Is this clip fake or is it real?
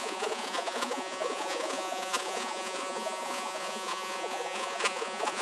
fake